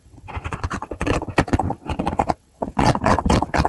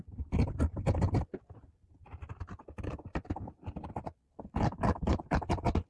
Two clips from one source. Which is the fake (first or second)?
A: first